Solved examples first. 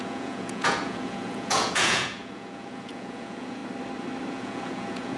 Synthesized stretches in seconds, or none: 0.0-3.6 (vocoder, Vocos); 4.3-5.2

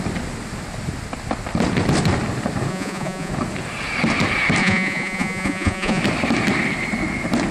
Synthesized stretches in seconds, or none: 2.7-3.3 (vocoder, Vocos); 4.6-6.0

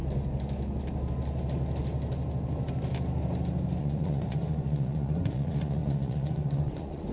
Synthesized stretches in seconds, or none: 3.8-7.1 (vocoder, Vocos)

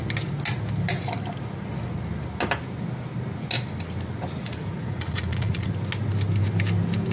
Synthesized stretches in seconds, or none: 4.4-5.7 (vocoder, Vocos)

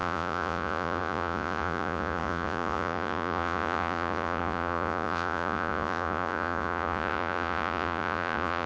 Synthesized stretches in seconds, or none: 0.0-8.7 (vocoder, Vocos)